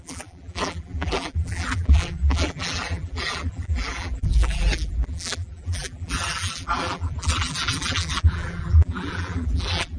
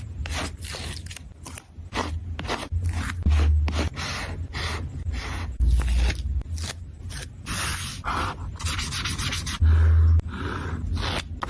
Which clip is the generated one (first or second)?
first